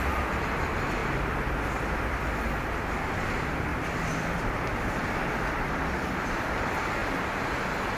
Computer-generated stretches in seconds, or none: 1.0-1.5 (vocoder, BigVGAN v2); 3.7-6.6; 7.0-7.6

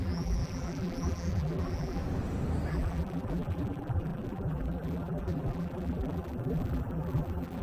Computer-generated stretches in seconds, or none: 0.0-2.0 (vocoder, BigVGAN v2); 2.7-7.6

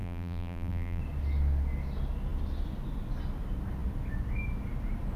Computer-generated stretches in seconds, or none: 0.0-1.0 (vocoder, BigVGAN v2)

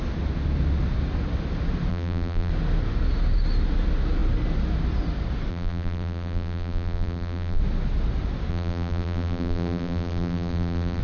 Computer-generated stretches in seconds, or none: 1.9-2.5 (vocoder, BigVGAN v2); 5.5-7.6; 8.5-11.0

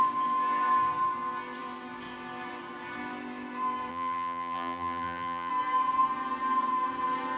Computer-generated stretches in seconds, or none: 3.9-5.5 (vocoder, BigVGAN v2)

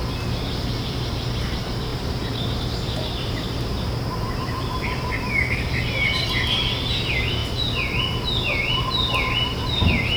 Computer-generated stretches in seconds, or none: 1.9-6.3 (vocoder, BigVGAN v2)

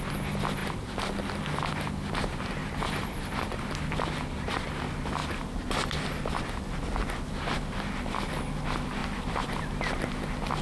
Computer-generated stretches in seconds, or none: 2.6-4.1 (vocoder, BigVGAN v2); 9.0-9.7